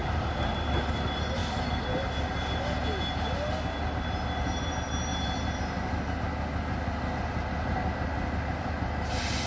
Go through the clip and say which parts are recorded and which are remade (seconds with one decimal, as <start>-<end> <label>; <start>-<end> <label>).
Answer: 0.0-5.1 recorded; 5.1-6.2 remade; 6.2-9.5 recorded